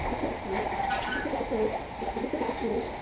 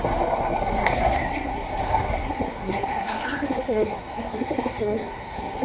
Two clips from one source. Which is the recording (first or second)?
first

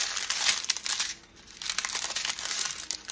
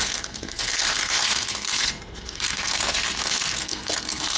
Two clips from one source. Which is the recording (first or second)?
first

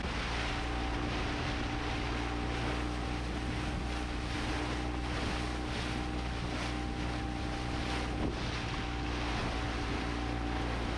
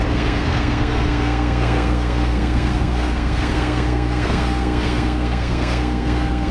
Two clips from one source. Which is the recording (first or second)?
first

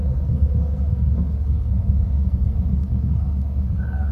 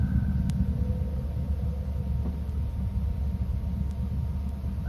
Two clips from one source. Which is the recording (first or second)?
second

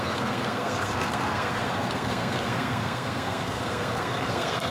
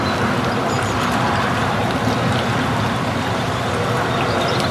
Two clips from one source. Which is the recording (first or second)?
second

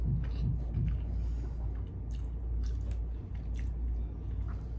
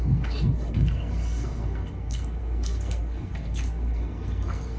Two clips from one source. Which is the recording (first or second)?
first